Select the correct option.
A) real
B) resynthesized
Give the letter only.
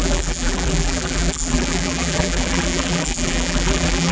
B